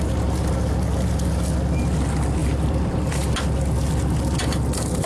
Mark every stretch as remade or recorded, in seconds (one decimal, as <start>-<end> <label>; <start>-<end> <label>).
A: 0.0-2.4 recorded; 2.4-3.4 remade; 3.4-5.1 recorded